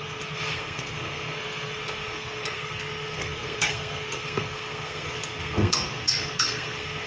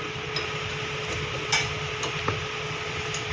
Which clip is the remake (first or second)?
first